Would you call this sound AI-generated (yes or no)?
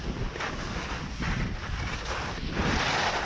no